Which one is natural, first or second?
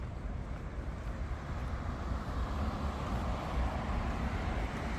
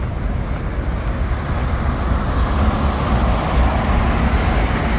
second